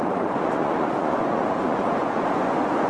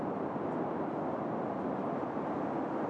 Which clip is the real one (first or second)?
second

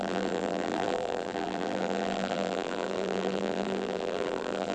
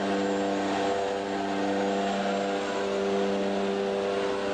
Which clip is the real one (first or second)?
second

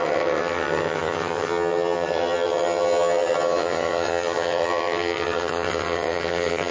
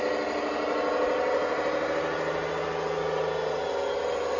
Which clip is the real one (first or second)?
second